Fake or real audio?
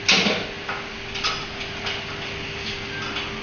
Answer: real